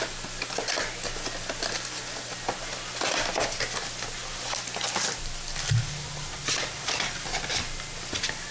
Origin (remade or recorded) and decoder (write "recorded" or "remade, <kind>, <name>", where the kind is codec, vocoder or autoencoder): recorded